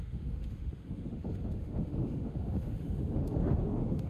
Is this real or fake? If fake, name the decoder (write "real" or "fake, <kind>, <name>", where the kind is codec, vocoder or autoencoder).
fake, autoencoder, DAC-VAE